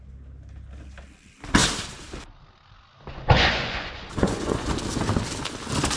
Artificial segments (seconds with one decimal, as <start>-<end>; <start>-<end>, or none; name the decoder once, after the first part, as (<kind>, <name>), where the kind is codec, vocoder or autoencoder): 3.1-4.7 (vocoder, Vocos)

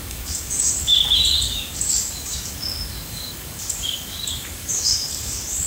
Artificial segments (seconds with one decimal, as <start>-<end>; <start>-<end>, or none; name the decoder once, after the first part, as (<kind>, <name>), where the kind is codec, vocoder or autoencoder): 0.0-5.7 (codec, DAC)

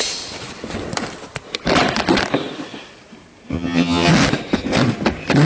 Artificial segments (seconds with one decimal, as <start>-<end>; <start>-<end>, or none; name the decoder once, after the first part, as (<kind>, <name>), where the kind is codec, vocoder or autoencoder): 3.5-4.1 (vocoder, HiFi-GAN)

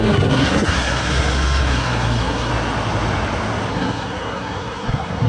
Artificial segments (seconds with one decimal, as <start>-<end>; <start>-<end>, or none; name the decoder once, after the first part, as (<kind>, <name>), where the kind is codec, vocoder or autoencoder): 0.0-2.5 (codec, SNAC); 3.7-5.3

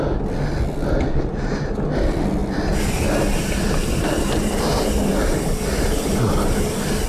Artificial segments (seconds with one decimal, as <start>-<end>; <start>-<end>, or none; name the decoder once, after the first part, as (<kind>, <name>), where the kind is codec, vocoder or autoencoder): none

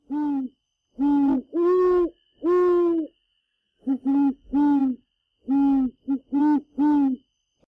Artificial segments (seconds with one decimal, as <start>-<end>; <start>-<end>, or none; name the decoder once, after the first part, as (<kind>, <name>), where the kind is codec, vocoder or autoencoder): 3.4-4.0 (codec, SNAC)

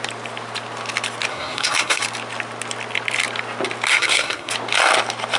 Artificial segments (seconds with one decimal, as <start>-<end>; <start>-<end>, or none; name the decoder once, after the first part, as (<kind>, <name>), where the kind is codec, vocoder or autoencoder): 1.3-2.0 (codec, SNAC); 3.9-4.5